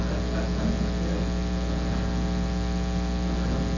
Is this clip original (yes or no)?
yes